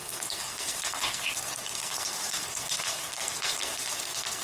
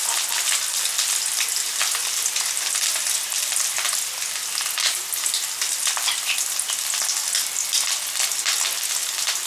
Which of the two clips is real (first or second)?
second